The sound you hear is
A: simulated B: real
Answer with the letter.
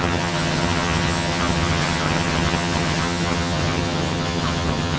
A